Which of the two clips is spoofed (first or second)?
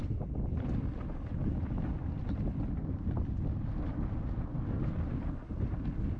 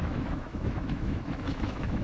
second